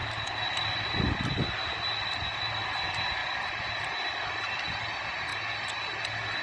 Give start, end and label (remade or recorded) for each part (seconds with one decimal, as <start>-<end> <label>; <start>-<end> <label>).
0.0-6.4 recorded